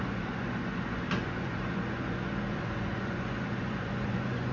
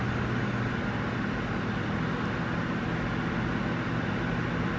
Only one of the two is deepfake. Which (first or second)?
first